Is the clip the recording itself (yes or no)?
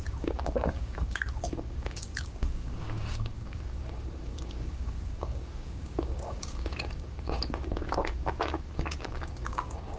no